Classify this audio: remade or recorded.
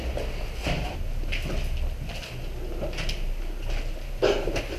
recorded